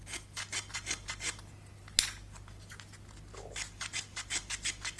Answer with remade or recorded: recorded